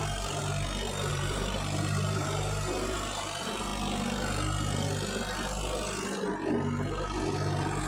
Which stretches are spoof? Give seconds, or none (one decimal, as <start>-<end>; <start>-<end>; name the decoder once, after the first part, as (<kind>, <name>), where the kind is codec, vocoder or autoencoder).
0.0-0.4 (vocoder, BigVGAN v2); 1.1-3.7

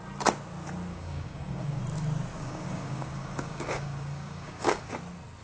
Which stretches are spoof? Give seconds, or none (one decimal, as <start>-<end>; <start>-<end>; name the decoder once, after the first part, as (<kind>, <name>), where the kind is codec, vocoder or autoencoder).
0.9-1.8 (codec, DAC); 2.3-4.9

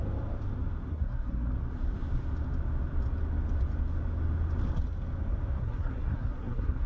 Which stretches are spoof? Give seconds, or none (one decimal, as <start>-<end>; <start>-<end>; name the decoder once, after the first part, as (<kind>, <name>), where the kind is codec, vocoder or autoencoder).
0.9-1.5 (codec, SNAC); 5.6-6.9

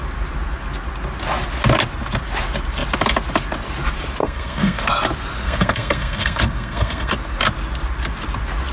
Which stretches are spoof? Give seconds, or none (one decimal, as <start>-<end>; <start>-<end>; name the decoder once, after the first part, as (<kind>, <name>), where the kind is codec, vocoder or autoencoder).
4.2-4.9 (codec, SNAC); 5.4-7.1

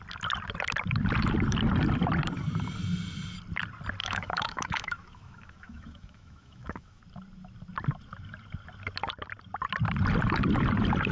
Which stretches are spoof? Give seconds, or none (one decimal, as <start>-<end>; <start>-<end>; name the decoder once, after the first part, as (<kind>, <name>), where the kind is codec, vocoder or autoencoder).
4.0-7.0 (autoencoder, DAC-VAE)

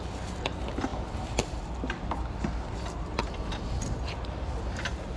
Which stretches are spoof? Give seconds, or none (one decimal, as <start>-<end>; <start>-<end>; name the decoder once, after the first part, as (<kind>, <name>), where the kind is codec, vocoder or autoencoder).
none